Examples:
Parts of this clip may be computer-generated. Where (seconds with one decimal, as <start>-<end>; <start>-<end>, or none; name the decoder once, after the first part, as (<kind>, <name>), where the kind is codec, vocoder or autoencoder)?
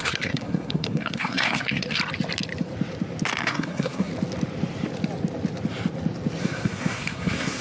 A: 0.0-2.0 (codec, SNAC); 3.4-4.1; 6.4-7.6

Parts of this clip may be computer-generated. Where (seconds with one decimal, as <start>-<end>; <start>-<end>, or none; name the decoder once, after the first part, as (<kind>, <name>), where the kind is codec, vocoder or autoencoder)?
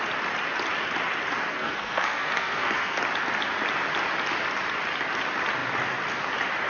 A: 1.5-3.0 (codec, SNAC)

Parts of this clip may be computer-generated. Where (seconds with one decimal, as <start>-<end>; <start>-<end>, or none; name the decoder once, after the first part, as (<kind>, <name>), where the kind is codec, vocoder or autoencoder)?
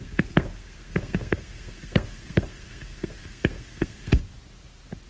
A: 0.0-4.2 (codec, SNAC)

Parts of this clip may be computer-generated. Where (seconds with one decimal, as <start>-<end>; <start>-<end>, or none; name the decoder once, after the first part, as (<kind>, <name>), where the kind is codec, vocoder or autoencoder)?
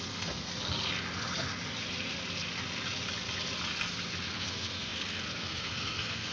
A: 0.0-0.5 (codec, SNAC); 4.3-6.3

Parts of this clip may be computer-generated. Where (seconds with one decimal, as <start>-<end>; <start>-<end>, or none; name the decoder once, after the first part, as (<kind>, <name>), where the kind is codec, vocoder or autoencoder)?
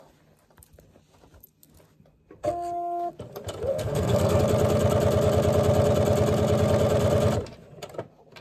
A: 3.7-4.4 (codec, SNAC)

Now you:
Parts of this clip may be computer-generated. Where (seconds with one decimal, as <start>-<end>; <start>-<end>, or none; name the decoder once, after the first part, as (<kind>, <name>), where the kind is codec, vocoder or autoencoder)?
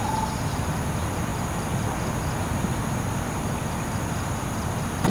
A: none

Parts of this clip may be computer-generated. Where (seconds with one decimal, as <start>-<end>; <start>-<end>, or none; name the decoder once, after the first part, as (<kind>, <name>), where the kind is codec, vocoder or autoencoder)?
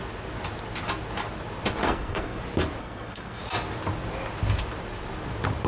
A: 1.8-2.4 (codec, SNAC); 2.8-3.4